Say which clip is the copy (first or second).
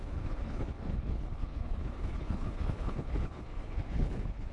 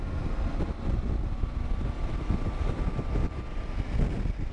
first